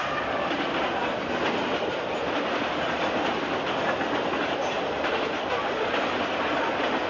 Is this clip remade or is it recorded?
recorded